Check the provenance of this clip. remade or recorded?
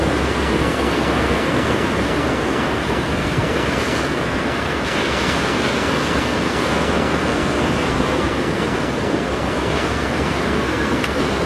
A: remade